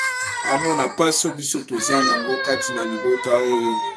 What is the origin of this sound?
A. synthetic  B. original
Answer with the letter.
A